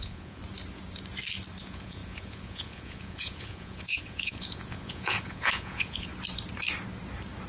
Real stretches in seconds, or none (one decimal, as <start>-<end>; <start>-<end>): 0.4-1.6; 6.1-7.5